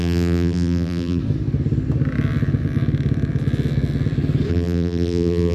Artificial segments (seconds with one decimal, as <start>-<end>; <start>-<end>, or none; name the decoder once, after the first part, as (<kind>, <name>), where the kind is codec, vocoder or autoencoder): 0.0-1.2 (vocoder, BigVGAN v2); 4.5-5.5